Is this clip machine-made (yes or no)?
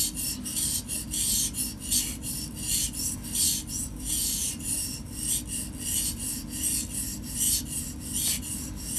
no